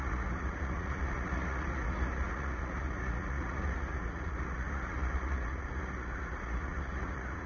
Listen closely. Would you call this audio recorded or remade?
remade